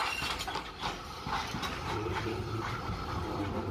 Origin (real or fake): real